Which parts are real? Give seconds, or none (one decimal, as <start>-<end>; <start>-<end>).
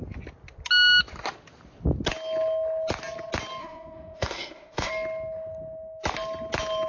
0.0-3.6; 4.9-6.9